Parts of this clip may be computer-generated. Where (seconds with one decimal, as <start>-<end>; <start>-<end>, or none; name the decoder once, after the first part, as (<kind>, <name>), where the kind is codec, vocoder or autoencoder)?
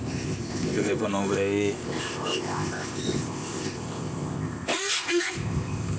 0.0-6.0 (codec, ZipCodec)